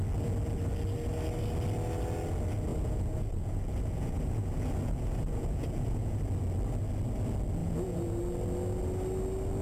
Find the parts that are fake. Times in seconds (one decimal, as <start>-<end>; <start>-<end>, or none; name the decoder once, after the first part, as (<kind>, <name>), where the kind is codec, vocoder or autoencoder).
2.7-6.2 (vocoder, Vocos); 7.6-8.2